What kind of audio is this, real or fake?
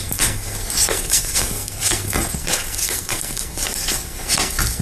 fake